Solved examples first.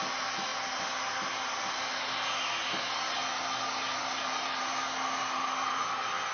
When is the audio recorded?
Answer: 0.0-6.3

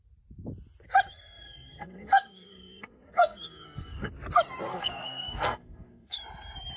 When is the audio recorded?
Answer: 0.0-1.1; 4.1-4.7; 6.2-6.8

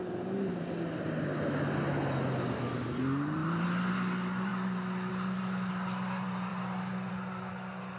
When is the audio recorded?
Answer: 0.0-8.0

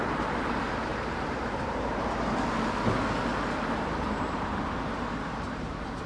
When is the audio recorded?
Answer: 0.0-0.9; 1.9-3.3

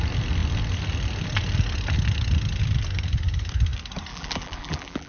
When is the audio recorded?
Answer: 0.0-4.1

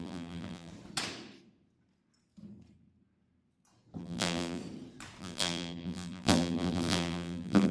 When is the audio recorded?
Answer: 0.7-4.0; 4.6-5.2

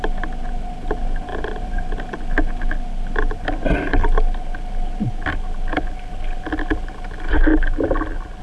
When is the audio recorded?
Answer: 0.0-8.4